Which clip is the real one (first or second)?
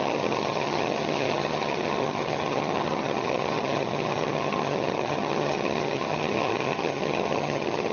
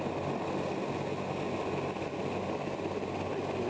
second